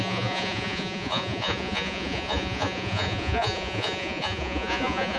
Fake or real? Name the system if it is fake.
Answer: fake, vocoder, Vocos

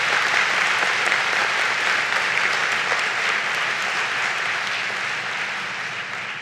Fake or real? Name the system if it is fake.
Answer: real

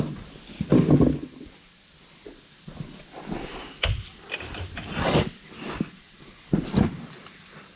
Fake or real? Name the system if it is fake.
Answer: real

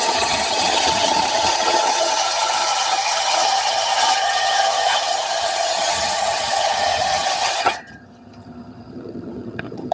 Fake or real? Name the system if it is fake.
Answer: fake, vocoder, HiFi-GAN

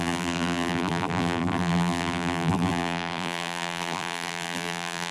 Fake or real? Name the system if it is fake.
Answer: fake, vocoder, BigVGAN v2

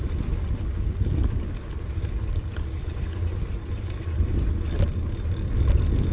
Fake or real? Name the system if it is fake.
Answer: real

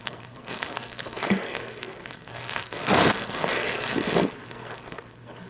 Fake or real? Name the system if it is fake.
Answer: fake, codec, SNAC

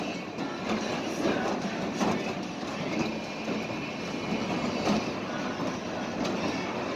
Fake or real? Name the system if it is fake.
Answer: real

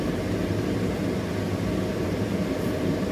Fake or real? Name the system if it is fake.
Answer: real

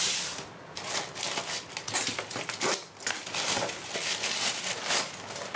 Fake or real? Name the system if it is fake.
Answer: real